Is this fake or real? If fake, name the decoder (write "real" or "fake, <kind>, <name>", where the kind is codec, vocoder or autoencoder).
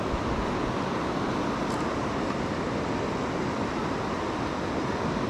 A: real